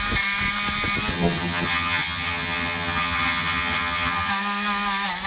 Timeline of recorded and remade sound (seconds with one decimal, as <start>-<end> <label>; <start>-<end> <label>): 0.0-1.1 recorded; 1.1-4.3 remade; 4.3-5.3 recorded